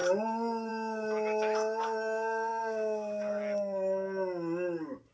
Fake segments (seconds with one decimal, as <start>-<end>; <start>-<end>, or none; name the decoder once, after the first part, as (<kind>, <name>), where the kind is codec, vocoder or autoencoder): none